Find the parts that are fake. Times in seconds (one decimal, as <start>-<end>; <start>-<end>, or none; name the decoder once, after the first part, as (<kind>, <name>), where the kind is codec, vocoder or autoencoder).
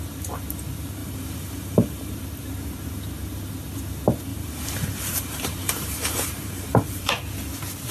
1.0-2.1 (vocoder, BigVGAN v2); 4.3-7.1